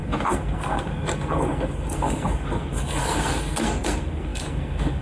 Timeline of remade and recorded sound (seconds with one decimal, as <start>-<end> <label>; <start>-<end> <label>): 0.0-5.0 remade